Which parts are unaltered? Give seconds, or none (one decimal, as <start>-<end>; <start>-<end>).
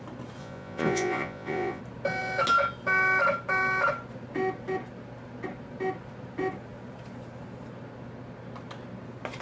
0.0-0.4; 1.8-9.4